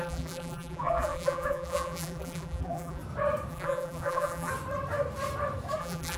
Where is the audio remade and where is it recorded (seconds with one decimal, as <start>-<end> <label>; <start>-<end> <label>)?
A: 0.0-3.0 remade; 3.0-3.5 recorded; 3.5-4.5 remade; 4.5-5.8 recorded; 5.8-6.2 remade